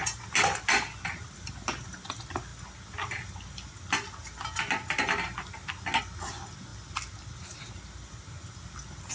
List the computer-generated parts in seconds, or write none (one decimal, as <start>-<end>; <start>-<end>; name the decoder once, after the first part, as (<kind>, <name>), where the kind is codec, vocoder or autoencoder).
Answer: none